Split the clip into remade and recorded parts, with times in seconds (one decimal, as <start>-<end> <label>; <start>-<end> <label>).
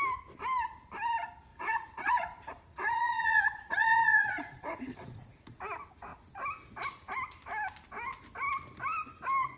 0.0-1.5 recorded; 1.5-5.6 remade; 5.6-9.6 recorded